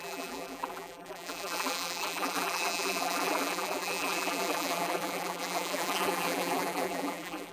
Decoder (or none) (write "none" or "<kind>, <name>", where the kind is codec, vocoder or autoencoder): vocoder, BigVGAN v2